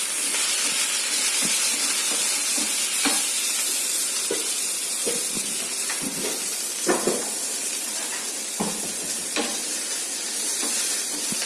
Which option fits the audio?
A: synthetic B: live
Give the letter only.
B